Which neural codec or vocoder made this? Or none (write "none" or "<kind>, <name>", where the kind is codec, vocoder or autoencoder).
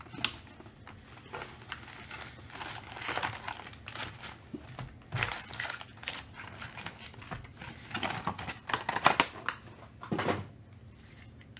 none